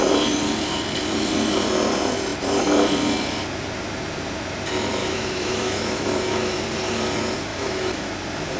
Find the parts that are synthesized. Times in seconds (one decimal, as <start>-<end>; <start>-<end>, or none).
5.0-6.6; 7.5-8.1